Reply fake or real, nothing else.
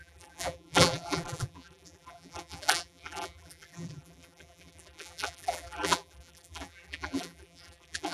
fake